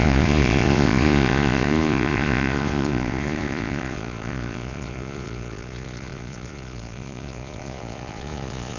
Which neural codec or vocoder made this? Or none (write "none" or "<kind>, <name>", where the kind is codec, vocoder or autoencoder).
vocoder, Vocos